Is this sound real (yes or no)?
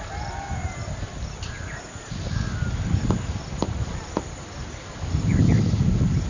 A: yes